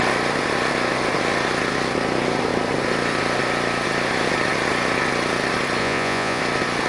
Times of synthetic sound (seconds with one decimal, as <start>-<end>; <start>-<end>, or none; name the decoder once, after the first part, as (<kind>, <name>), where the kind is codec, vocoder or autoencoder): 5.8-6.4 (vocoder, Vocos)